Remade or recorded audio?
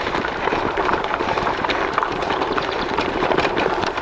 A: remade